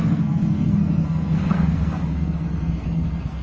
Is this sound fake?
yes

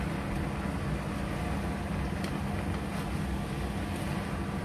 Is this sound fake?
no